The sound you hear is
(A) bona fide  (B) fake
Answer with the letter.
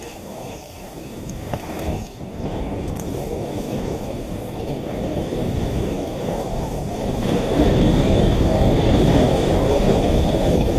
B